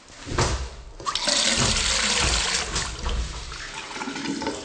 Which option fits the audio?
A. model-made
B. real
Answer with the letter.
B